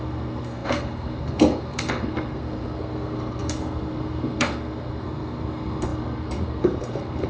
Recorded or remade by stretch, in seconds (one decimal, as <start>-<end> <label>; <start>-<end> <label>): 0.0-7.3 remade